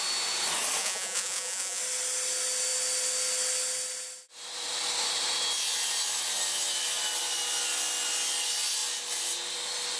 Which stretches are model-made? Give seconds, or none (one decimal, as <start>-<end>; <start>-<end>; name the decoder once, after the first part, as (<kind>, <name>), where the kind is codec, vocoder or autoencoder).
0.8-1.8 (vocoder, Vocos)